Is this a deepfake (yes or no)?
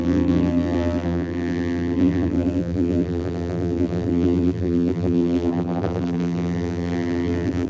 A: yes